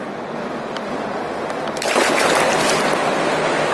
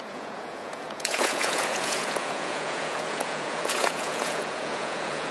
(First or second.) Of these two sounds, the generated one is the second